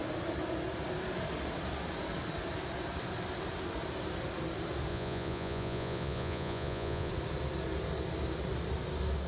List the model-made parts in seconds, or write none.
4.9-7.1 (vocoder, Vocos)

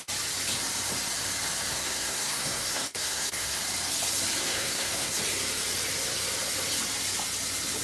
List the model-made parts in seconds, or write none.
1.7-3.6 (codec, SNAC); 4.4-5.2

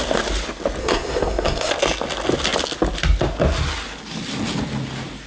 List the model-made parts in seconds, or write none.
0.8-1.7 (codec, SNAC)

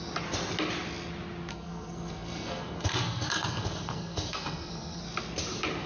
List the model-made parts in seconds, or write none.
1.5-5.0 (codec, SNAC)

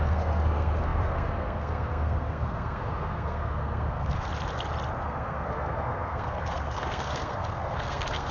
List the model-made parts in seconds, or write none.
0.0-4.3 (codec, SNAC); 5.0-8.3

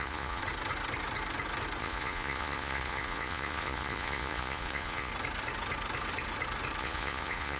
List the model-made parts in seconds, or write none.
0.0-0.4 (vocoder, Vocos); 1.8-5.1; 6.8-7.6